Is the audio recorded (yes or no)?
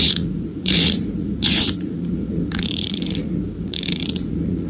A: no